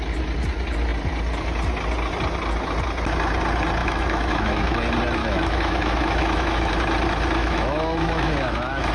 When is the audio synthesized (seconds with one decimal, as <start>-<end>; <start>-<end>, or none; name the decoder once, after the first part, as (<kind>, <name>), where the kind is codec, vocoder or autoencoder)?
3.8-4.8 (autoencoder, DAC-VAE); 5.2-6.7; 7.4-8.9